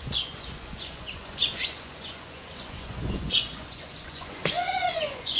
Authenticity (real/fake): fake